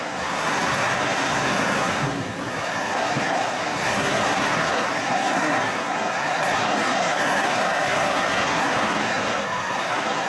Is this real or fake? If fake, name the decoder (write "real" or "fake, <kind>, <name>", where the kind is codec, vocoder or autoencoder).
fake, codec, SNAC